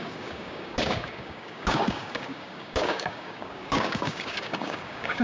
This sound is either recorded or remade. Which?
remade